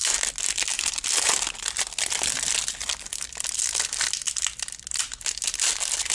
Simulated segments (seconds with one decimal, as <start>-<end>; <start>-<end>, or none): none